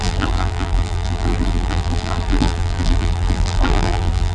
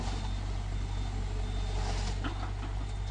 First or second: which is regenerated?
first